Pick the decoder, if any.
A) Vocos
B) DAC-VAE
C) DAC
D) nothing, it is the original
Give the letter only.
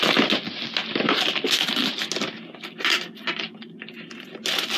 D